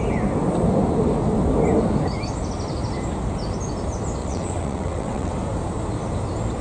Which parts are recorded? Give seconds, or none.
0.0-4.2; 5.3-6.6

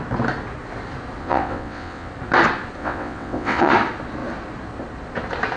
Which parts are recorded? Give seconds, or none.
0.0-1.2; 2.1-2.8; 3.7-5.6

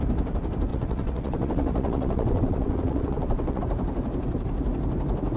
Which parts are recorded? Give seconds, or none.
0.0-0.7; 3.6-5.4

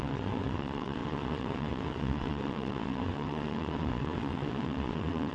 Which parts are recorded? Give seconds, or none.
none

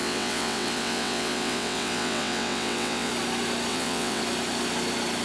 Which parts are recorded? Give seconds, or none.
3.1-3.7; 4.2-5.2